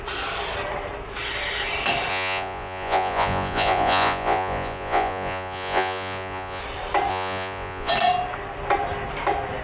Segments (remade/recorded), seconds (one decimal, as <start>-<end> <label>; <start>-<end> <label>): 0.0-2.1 recorded; 2.1-6.6 remade; 6.6-7.1 recorded; 7.1-7.9 remade; 7.9-9.6 recorded